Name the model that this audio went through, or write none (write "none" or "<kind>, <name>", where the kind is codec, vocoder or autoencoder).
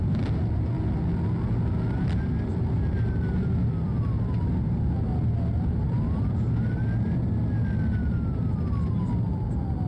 none